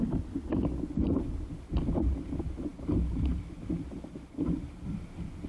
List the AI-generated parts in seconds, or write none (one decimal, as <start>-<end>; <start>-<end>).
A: none